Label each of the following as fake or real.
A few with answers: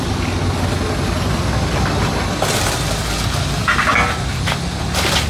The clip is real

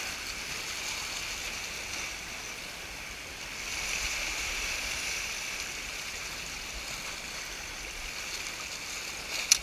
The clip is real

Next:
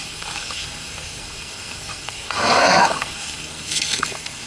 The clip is fake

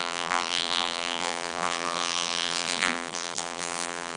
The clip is fake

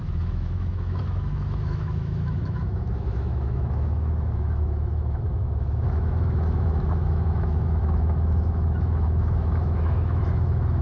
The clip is fake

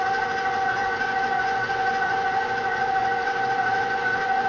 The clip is fake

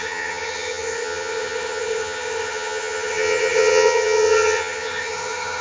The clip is fake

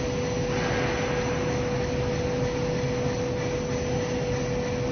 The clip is real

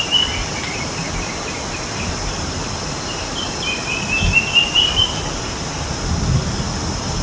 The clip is real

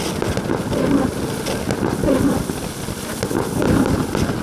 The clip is real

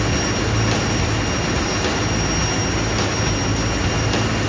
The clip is real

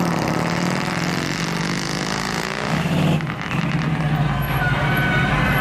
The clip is real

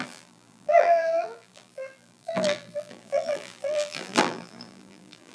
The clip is fake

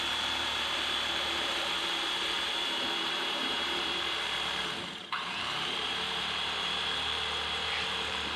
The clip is fake